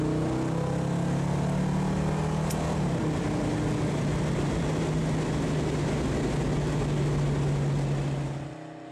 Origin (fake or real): real